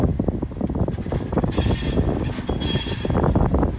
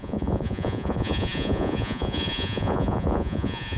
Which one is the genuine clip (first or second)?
first